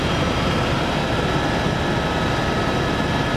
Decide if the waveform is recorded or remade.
recorded